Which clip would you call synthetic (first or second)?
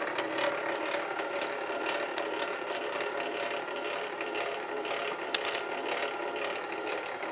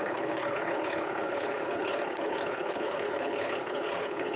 second